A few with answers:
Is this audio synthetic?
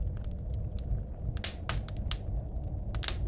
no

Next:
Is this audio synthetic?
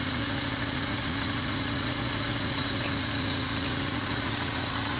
yes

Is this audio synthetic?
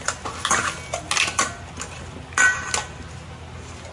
no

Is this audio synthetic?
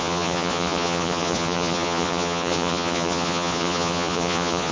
yes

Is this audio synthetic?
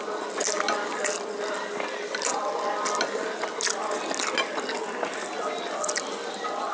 no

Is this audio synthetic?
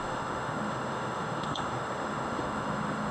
yes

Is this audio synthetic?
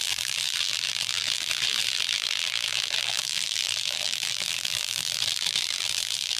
yes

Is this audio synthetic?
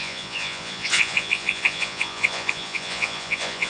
yes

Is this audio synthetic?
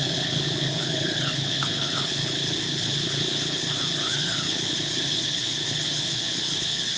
yes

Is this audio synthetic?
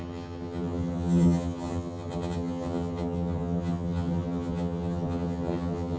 yes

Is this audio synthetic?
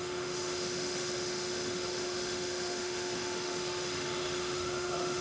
yes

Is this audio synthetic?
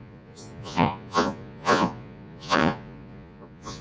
yes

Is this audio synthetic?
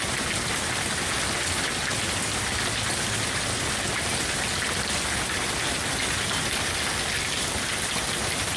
no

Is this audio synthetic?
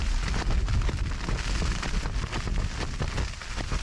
no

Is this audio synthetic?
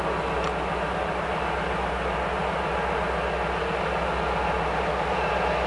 no